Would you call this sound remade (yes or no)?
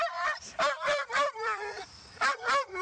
yes